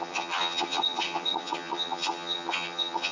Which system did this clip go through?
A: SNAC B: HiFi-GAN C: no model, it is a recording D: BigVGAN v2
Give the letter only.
B